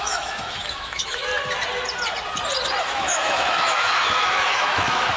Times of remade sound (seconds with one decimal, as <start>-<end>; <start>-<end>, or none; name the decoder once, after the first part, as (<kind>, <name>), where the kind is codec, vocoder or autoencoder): 0.0-1.3 (autoencoder, DAC-VAE); 2.8-5.2